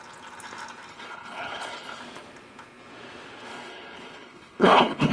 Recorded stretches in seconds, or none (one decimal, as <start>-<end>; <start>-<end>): 0.0-0.9; 2.0-3.5